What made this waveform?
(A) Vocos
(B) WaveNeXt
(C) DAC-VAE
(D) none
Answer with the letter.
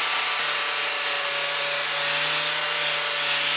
D